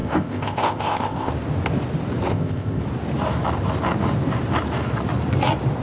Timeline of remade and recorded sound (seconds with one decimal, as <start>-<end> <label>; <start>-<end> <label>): 0.0-1.3 remade; 1.3-2.3 recorded; 2.3-2.8 remade; 2.8-5.8 recorded